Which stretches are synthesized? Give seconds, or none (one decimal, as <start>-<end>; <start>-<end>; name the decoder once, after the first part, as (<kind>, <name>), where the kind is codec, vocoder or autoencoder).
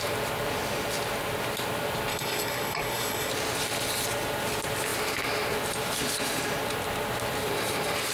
2.1-3.3 (codec, DAC)